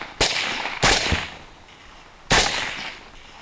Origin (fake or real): real